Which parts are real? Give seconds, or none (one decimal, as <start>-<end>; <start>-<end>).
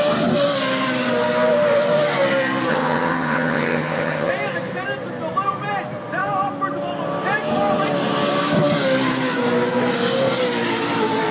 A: 0.0-2.7; 4.3-11.3